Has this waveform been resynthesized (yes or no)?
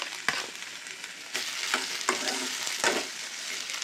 no